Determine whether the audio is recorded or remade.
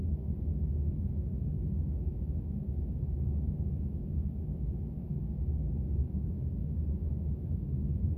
remade